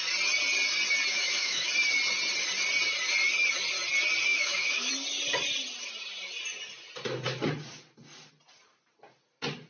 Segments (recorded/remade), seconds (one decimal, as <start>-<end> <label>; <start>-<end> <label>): 0.0-1.1 recorded; 1.1-1.7 remade; 1.7-4.3 recorded; 4.3-4.9 remade; 4.9-9.7 recorded